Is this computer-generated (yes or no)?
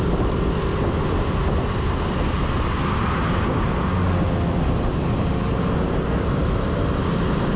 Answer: no